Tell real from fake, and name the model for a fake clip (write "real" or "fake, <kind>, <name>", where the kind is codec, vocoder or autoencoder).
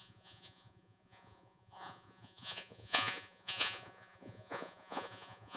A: fake, vocoder, Vocos